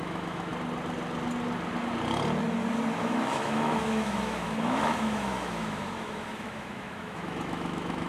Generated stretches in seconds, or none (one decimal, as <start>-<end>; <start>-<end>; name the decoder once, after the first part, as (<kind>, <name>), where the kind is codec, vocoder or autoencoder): 0.0-0.5 (autoencoder, DAC-VAE); 3.0-8.1